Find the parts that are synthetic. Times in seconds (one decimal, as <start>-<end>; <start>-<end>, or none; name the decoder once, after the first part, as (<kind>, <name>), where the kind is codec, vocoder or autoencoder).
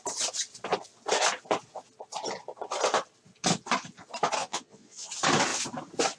4.4-5.1 (vocoder, Vocos)